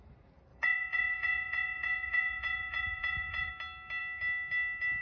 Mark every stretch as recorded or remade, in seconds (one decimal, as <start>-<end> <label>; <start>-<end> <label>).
0.0-0.5 recorded; 0.5-3.5 remade; 3.5-5.0 recorded

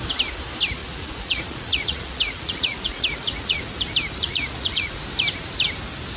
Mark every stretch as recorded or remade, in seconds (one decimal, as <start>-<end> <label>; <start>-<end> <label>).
0.0-0.8 recorded; 0.8-3.7 remade; 3.7-4.2 recorded; 4.2-5.0 remade; 5.0-6.2 recorded

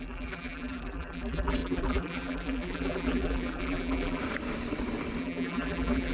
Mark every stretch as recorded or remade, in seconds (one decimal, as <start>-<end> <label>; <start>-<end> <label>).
0.0-4.2 remade; 4.2-5.2 recorded; 5.2-6.1 remade

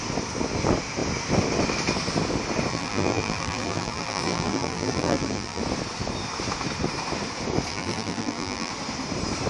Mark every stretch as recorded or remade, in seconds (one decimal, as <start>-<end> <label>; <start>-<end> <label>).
0.0-2.7 recorded; 2.7-5.6 remade; 5.6-7.7 recorded; 7.7-8.7 remade; 8.7-9.5 recorded

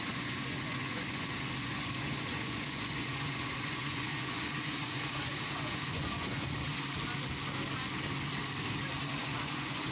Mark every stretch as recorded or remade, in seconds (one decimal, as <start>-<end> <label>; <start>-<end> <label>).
0.0-6.7 remade; 6.7-9.2 recorded; 9.2-9.9 remade

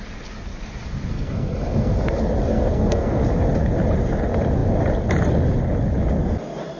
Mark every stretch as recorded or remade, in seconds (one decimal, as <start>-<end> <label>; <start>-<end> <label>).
0.0-1.1 recorded; 1.1-2.0 remade; 2.0-2.5 recorded; 2.5-3.2 remade; 3.2-6.8 recorded

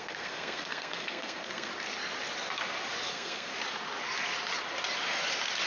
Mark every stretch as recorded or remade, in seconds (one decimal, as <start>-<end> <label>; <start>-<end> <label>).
0.0-1.7 remade; 1.7-3.1 recorded; 3.1-3.5 remade; 3.5-5.7 recorded